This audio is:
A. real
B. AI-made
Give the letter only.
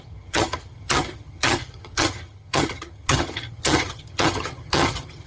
B